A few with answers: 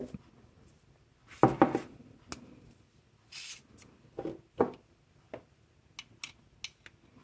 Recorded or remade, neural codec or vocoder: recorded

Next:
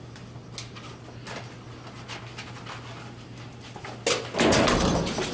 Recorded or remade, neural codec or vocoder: recorded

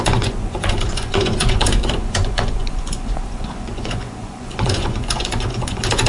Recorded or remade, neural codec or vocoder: remade, vocoder, Vocos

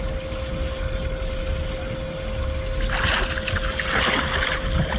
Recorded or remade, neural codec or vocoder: recorded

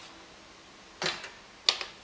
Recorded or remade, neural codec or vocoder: recorded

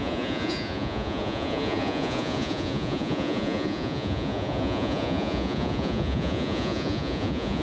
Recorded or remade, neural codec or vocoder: remade, vocoder, Vocos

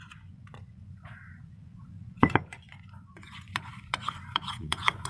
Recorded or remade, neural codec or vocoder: remade, vocoder, Vocos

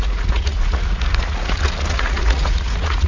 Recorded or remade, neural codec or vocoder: remade, vocoder, Vocos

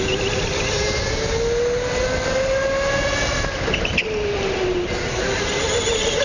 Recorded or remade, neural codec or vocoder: recorded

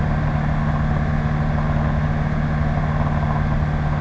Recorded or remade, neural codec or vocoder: recorded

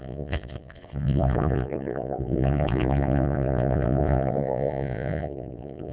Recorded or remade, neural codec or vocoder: remade, vocoder, Vocos